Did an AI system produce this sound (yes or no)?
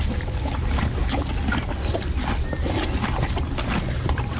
no